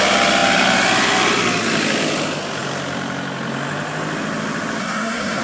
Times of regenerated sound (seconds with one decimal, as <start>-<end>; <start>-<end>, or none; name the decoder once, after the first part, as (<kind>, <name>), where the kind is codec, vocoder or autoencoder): 4.8-5.4 (codec, SNAC)